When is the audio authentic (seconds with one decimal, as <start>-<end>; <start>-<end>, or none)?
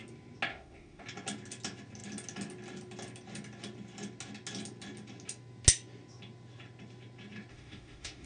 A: 0.0-0.5; 1.0-7.5